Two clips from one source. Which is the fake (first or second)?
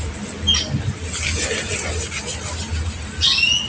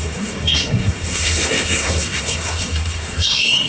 second